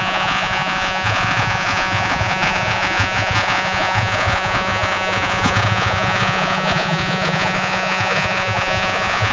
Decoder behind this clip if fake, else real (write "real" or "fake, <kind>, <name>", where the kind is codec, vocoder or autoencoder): fake, vocoder, Vocos